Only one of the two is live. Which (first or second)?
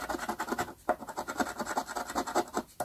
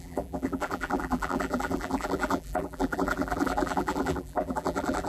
first